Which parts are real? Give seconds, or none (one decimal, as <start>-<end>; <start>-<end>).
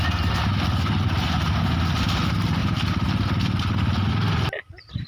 0.0-5.1